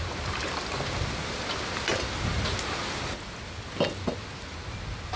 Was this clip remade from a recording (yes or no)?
no